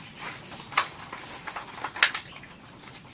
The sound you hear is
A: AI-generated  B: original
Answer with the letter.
B